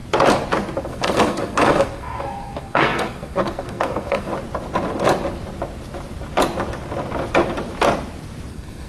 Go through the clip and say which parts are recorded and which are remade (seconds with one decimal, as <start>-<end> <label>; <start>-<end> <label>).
0.0-0.8 recorded; 0.8-4.3 remade; 4.3-8.5 recorded; 8.5-8.9 remade